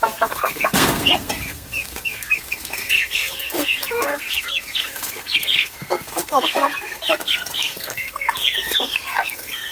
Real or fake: fake